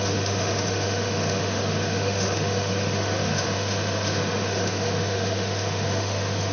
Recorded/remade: remade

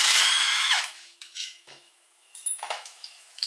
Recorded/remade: remade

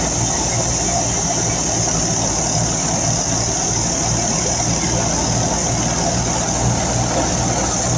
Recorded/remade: recorded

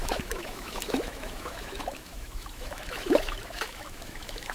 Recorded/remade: remade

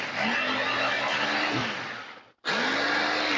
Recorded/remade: recorded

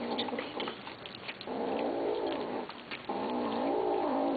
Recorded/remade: recorded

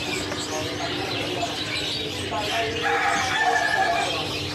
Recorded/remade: recorded